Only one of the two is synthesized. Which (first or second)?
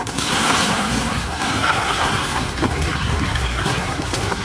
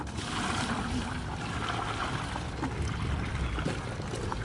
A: first